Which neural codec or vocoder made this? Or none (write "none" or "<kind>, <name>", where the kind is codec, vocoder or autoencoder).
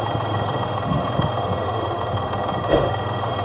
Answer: autoencoder, DAC-VAE